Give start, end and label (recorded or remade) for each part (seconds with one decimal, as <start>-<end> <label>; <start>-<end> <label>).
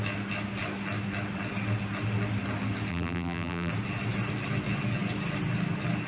0.0-2.9 recorded; 2.9-3.7 remade; 3.7-6.1 recorded